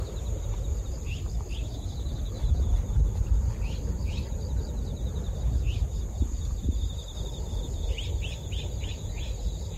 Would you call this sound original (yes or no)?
yes